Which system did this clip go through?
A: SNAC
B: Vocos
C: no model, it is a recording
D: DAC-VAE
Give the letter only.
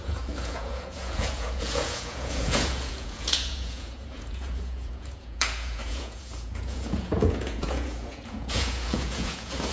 B